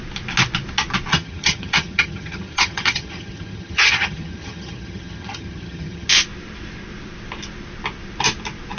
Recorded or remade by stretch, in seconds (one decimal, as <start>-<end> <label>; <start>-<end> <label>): 0.0-1.1 recorded; 1.1-6.1 remade; 6.1-8.8 recorded